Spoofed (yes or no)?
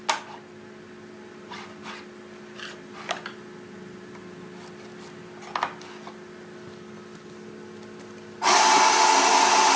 no